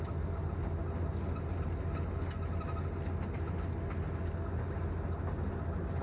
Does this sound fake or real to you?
real